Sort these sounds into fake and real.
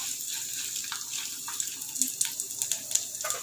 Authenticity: real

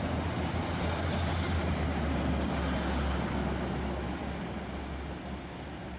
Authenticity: real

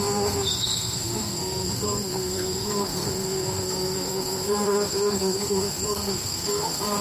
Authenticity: fake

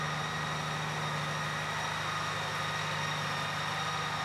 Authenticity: real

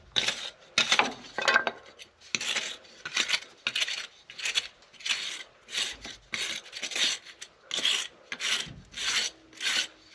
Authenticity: real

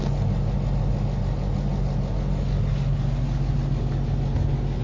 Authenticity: real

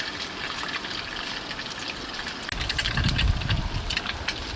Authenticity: real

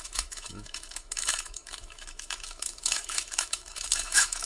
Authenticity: fake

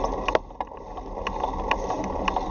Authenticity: real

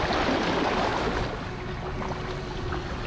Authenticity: real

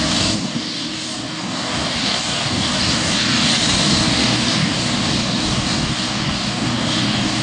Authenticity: fake